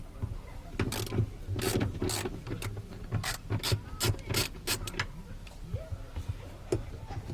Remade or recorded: recorded